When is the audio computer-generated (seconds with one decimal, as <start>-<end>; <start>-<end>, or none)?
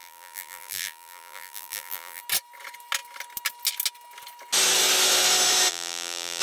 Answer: 0.0-2.2; 5.7-6.4